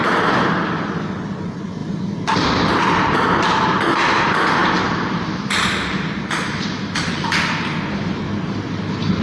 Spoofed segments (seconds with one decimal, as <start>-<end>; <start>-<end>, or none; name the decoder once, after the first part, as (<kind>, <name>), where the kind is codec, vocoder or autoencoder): 4.6-7.4 (vocoder, BigVGAN v2)